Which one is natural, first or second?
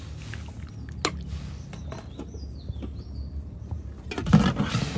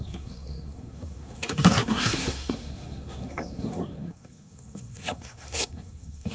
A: first